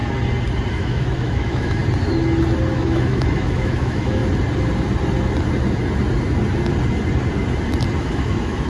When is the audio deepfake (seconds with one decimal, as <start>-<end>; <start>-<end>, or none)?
0.7-1.8; 2.7-4.2; 8.0-8.7